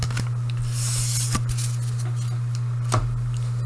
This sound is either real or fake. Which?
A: real